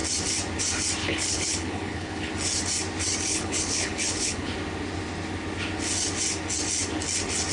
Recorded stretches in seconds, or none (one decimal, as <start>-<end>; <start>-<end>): 0.0-1.0; 2.3-3.3; 4.5-7.5